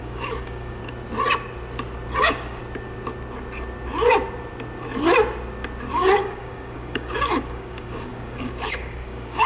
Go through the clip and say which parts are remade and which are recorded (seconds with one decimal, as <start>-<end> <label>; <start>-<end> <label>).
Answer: 0.0-0.8 remade; 0.8-2.2 recorded; 2.2-2.6 remade; 2.6-5.9 recorded; 5.9-9.5 remade